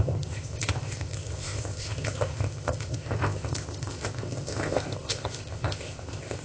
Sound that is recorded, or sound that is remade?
remade